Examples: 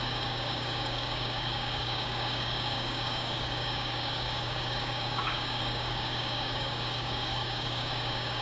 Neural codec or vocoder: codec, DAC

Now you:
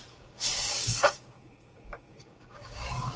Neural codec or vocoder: codec, DAC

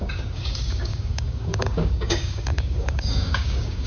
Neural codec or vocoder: codec, DAC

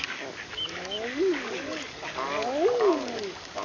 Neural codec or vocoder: codec, DAC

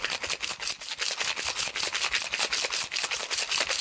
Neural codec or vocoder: none